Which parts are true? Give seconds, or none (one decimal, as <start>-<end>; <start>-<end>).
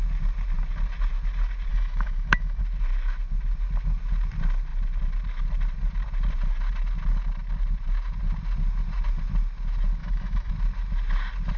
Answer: 0.0-1.7; 2.6-10.0; 10.5-11.6